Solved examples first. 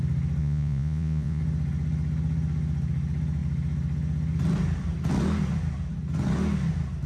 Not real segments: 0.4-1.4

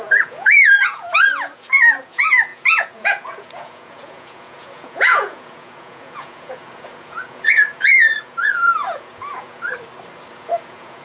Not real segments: 0.0-9.7; 10.3-11.0

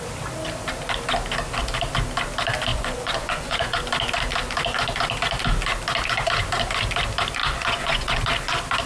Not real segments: 2.7-3.8; 7.4-8.2

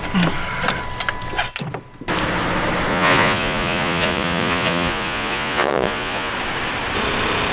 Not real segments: 2.9-6.3

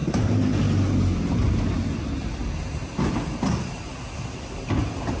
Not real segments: none

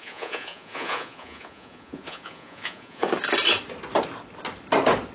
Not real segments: 0.0-3.1

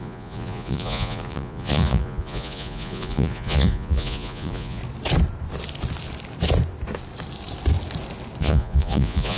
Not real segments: 0.0-4.8; 8.4-9.4

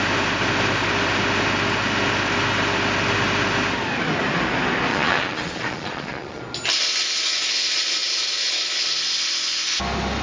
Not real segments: 4.9-6.4